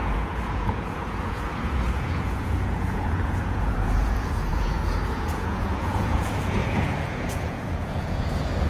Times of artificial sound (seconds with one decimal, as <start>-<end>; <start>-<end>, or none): 0.0-8.7